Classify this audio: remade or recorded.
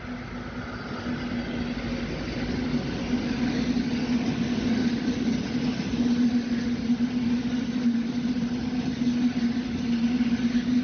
recorded